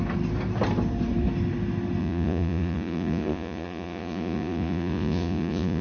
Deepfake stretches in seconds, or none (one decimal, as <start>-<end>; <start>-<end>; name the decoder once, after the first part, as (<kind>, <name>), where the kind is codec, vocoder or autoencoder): 2.0-5.8 (vocoder, Vocos)